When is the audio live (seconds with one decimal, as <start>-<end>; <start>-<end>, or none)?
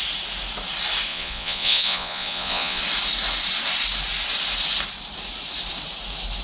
0.0-1.1; 2.8-6.4